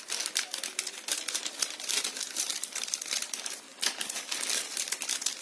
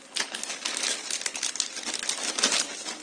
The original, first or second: second